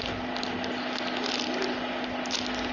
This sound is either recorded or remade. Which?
recorded